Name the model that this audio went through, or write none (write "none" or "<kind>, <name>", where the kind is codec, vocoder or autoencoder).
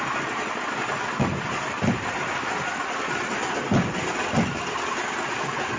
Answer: none